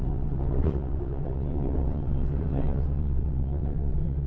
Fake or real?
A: fake